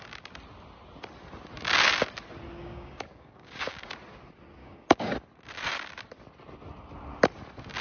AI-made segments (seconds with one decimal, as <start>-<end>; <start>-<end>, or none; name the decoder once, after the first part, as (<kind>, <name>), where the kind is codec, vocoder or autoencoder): 2.6-3.9 (codec, DAC); 4.6-5.1